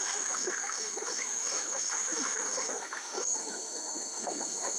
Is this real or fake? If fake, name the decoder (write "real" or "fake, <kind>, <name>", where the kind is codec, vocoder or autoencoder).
fake, autoencoder, DAC-VAE